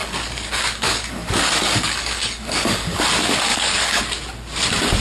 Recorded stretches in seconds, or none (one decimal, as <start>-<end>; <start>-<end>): 3.0-3.5; 4.0-5.0